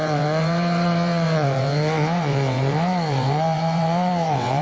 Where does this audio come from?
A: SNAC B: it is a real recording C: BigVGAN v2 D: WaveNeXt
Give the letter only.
D